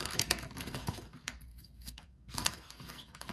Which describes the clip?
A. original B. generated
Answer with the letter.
B